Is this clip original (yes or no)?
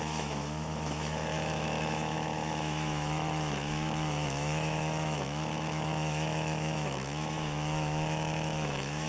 no